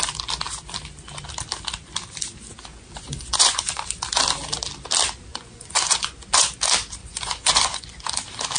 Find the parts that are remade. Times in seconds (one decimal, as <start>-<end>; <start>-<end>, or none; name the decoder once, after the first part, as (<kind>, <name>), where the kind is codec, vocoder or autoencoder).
2.7-3.8 (vocoder, Vocos); 5.3-6.5; 7.0-7.9